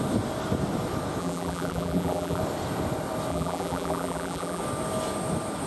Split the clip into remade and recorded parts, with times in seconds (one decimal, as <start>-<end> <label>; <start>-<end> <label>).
0.0-1.2 recorded; 1.2-2.4 remade; 2.4-3.3 recorded; 3.3-4.6 remade; 4.6-5.7 recorded